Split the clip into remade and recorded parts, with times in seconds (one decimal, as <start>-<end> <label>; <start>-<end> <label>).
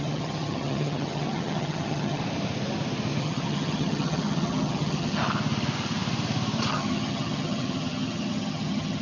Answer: 0.0-2.2 remade; 2.2-3.2 recorded; 3.2-5.2 remade; 5.2-6.7 recorded; 6.7-9.0 remade